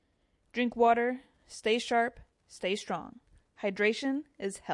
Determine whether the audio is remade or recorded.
recorded